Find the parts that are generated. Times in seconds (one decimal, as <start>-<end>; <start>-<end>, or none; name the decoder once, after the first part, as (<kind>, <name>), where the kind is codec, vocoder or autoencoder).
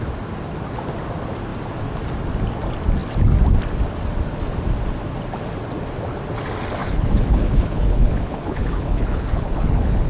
6.8-10.1 (codec, HILCodec)